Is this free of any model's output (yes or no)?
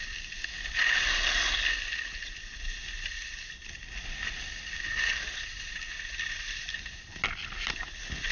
yes